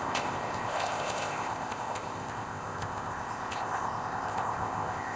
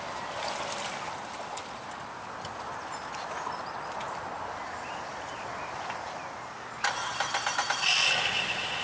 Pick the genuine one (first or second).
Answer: second